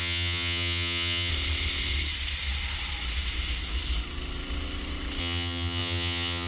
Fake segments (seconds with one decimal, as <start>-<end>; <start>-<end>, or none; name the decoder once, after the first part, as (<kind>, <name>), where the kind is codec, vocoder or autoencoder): 0.0-1.3 (vocoder, HiFi-GAN); 5.2-6.5